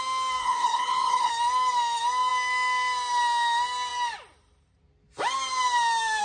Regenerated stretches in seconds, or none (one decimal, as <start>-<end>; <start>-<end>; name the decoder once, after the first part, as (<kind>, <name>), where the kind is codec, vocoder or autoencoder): 0.4-1.3 (codec, HILCodec)